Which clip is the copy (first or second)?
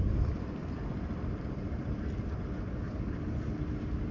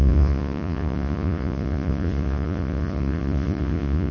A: second